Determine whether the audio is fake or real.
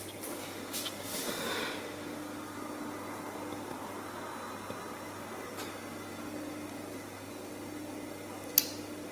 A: real